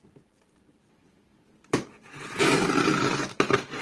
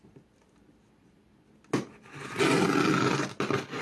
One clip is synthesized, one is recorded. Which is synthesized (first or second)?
first